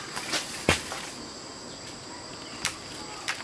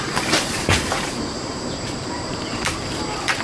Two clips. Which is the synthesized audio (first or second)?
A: second